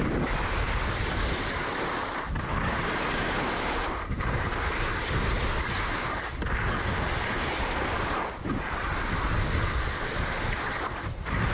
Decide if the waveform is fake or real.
real